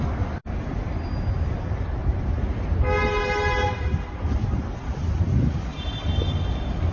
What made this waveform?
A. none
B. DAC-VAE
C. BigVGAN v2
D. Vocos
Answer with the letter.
A